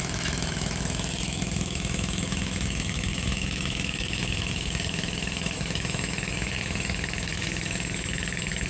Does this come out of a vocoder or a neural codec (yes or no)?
yes